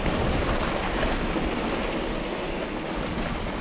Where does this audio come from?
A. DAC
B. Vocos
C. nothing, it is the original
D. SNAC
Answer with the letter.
C